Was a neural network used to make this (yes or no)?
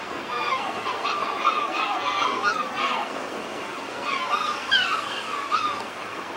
yes